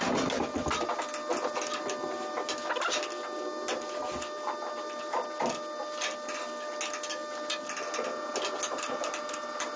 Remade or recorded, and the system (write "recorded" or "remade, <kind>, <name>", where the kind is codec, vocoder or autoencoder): recorded